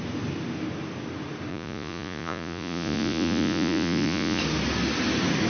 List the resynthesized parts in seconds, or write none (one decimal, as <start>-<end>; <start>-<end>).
1.5-4.4